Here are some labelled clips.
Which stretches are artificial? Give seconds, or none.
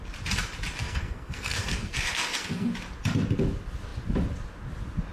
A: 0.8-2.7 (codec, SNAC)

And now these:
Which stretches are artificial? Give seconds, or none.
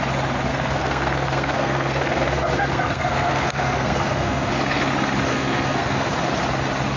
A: 0.5-4.5 (codec, SNAC); 5.3-6.1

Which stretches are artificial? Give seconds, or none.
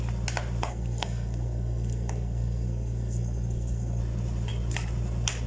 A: 0.7-4.0 (codec, SNAC)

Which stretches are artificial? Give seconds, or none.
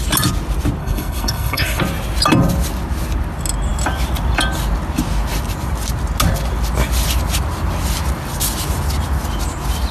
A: 0.8-1.8 (codec, SNAC)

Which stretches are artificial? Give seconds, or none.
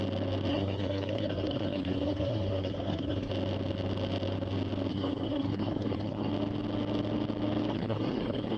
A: 0.5-3.3 (codec, SNAC); 4.9-6.3; 7.7-8.6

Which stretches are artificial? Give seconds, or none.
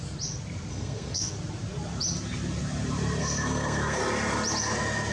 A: 0.7-1.3 (codec, SNAC); 3.2-4.0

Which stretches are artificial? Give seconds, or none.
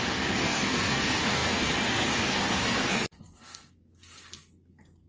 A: 0.0-5.1 (codec, SNAC)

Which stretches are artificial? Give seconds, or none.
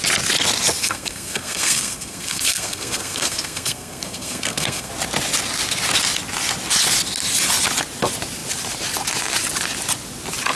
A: 0.8-4.9 (codec, SNAC)